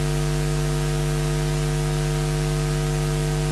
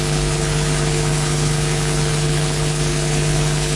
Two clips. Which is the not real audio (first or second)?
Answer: second